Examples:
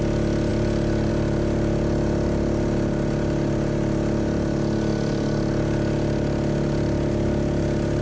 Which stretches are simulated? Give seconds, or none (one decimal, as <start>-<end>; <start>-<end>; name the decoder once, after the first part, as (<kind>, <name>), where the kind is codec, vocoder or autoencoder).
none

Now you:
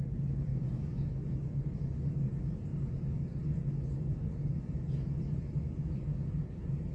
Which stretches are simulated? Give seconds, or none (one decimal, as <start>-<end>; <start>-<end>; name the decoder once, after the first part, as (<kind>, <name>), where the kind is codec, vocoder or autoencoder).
0.5-2.1 (autoencoder, DAC-VAE)

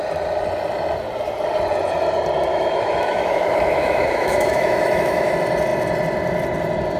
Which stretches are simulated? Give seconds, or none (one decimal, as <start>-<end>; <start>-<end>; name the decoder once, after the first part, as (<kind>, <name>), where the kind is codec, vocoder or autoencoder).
2.5-5.3 (autoencoder, DAC-VAE)